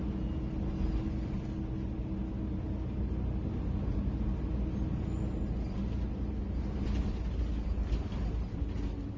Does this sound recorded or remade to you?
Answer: recorded